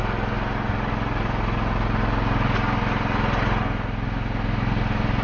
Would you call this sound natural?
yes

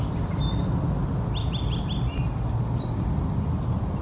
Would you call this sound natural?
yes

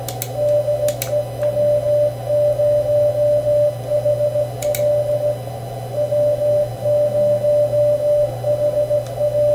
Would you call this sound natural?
yes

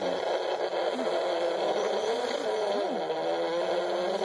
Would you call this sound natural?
yes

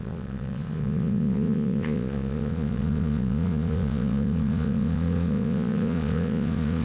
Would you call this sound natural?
no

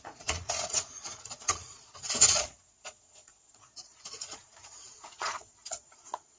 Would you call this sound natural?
no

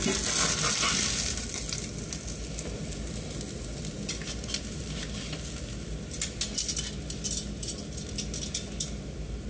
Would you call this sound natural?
yes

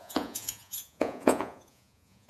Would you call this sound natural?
no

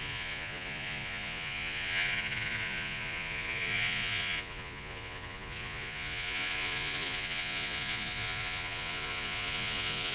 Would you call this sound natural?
no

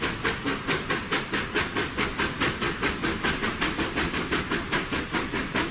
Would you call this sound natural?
yes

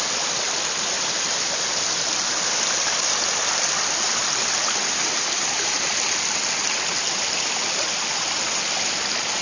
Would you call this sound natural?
yes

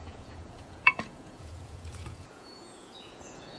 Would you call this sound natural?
no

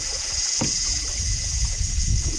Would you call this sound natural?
no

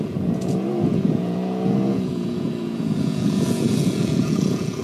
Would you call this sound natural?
no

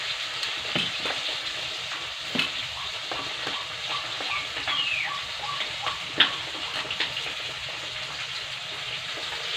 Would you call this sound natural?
yes